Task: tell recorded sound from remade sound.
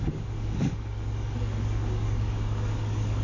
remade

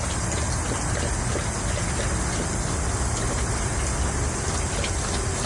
recorded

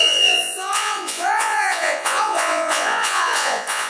remade